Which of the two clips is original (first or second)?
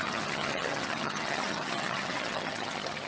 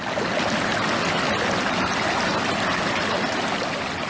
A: second